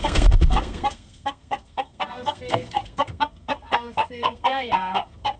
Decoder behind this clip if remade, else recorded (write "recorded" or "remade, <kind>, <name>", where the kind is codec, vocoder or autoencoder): remade, codec, SNAC